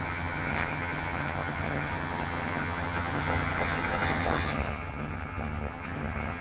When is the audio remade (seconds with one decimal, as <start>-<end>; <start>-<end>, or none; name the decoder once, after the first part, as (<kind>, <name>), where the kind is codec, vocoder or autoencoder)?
0.0-6.4 (vocoder, HiFi-GAN)